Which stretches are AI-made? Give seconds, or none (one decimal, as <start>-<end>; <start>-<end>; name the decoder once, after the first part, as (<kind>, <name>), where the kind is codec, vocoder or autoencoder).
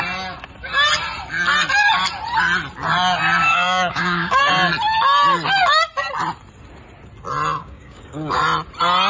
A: 3.4-4.4 (codec, DAC); 7.6-8.4